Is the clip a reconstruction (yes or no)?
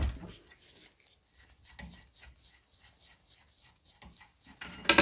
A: no